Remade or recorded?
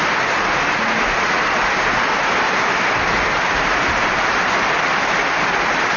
recorded